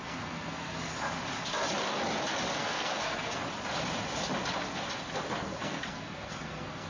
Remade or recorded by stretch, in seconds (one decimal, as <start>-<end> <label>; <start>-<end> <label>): 0.0-0.9 remade; 0.9-2.6 recorded; 2.6-3.4 remade; 3.4-5.6 recorded; 5.6-6.9 remade